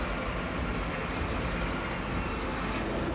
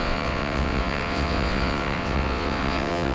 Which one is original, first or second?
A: first